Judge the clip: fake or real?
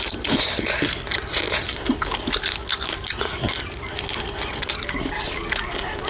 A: real